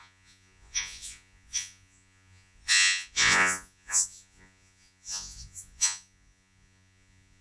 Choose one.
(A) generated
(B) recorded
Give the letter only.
A